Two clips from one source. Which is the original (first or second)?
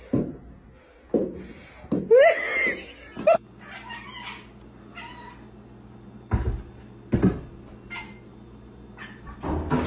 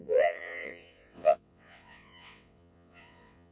first